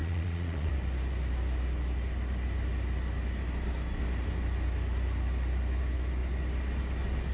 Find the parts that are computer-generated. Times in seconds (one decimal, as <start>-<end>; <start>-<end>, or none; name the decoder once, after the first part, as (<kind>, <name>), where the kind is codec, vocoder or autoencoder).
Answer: 0.0-0.7 (vocoder, Vocos)